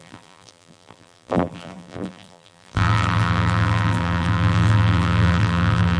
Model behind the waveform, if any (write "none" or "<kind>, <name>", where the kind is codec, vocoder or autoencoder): vocoder, BigVGAN v2